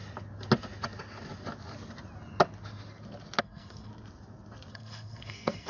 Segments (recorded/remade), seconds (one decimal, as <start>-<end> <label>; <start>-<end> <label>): 0.0-3.4 recorded; 3.4-3.9 remade; 3.9-4.7 recorded; 4.7-5.7 remade